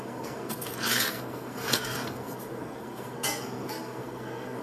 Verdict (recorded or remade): remade